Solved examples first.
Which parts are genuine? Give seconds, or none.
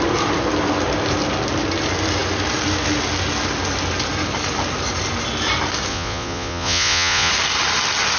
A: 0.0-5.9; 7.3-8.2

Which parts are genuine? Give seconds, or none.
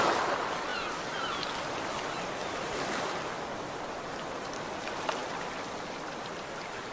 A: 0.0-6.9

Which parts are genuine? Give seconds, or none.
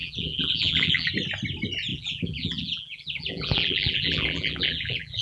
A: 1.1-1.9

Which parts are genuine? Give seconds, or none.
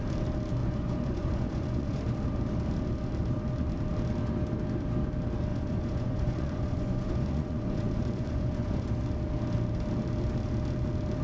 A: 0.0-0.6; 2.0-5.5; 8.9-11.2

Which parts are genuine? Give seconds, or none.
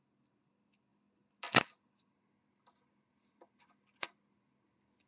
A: 0.0-5.1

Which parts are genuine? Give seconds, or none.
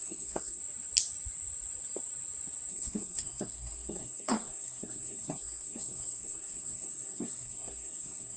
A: 0.6-2.7